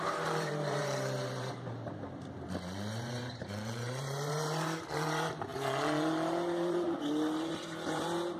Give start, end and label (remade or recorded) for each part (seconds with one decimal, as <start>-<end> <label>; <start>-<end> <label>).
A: 0.0-8.4 remade